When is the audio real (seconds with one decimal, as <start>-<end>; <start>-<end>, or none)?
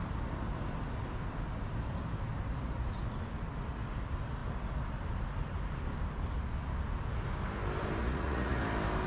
0.0-8.0; 8.6-9.1